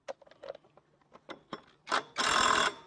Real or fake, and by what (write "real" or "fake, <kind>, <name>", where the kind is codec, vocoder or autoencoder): real